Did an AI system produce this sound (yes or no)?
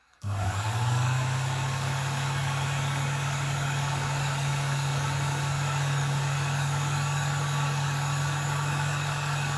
yes